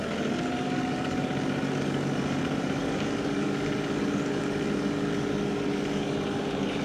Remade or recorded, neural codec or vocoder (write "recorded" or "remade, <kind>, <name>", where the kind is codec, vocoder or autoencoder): remade, codec, DAC